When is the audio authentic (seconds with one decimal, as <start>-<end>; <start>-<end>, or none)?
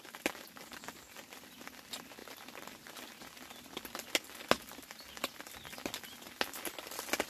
0.0-7.3